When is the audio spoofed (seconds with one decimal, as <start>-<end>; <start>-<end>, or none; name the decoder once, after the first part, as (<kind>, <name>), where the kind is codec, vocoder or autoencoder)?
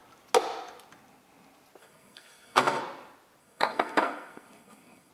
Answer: 1.8-2.8 (codec, SNAC); 3.4-5.1